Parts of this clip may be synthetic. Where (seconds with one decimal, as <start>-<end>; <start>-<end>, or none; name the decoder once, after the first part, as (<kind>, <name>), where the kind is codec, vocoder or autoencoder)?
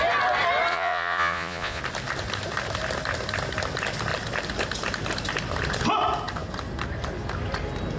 0.7-1.8 (vocoder, Vocos)